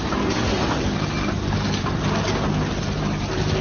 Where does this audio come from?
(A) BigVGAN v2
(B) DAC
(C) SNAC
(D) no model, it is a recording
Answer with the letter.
D